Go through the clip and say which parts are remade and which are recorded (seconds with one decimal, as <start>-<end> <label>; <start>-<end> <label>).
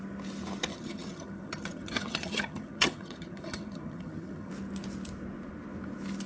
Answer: 0.0-0.7 recorded; 0.7-4.5 remade; 4.5-6.3 recorded